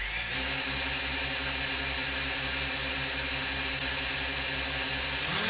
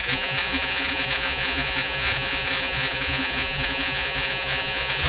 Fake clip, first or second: second